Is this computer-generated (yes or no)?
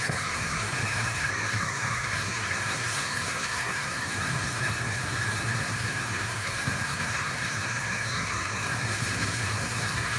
yes